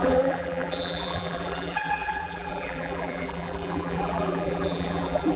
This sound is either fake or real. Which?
fake